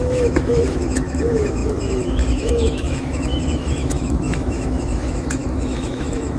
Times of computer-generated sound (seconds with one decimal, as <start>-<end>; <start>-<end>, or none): 0.0-6.4